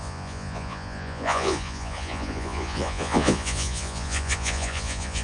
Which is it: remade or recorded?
remade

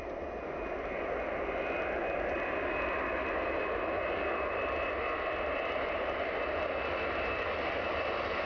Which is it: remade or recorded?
recorded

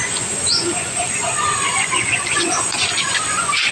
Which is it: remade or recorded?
remade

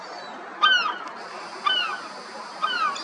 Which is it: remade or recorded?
recorded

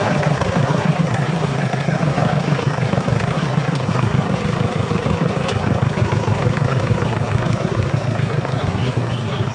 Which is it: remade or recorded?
remade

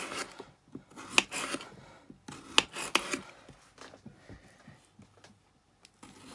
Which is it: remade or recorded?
recorded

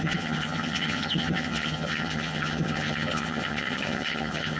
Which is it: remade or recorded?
remade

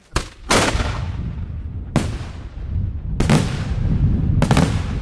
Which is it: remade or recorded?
recorded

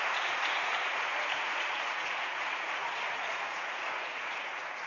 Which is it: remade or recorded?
remade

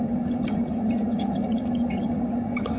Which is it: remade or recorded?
remade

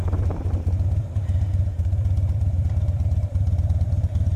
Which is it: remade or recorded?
remade